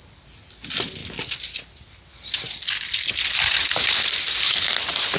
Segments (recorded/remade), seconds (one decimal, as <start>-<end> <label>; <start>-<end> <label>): 0.0-5.2 recorded